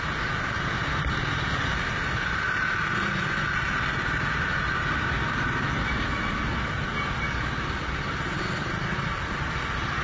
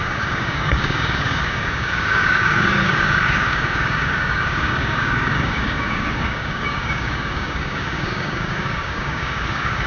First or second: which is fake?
second